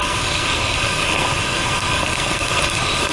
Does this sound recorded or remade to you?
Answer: remade